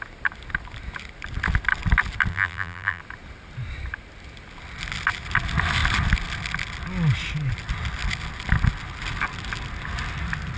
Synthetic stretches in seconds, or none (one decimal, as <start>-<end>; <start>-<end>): 2.3-3.0